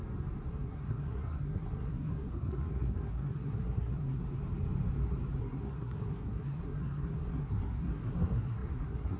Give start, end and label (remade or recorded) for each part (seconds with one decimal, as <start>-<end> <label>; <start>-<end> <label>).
0.0-0.5 recorded; 0.5-4.2 remade; 4.2-5.4 recorded; 5.4-9.2 remade